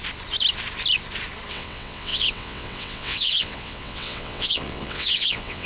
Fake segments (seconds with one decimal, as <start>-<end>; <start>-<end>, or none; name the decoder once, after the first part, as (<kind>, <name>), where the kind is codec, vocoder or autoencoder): 1.5-5.7 (vocoder, WaveNeXt)

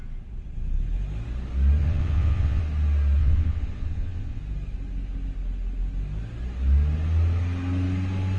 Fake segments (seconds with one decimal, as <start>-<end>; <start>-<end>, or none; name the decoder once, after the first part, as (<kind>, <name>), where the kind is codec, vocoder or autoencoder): 1.8-2.6 (vocoder, WaveNeXt); 3.2-4.4

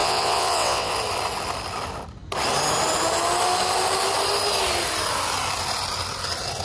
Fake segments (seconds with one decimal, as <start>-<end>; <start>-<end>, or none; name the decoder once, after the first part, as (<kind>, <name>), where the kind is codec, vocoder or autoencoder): 0.0-0.9 (vocoder, WaveNeXt)

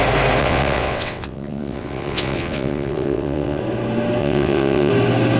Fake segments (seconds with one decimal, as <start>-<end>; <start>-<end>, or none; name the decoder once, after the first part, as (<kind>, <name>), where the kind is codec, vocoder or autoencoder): 0.4-3.6 (vocoder, WaveNeXt); 4.2-4.9